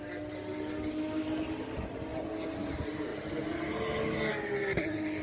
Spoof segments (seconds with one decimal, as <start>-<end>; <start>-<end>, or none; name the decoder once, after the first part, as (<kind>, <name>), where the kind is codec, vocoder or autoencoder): none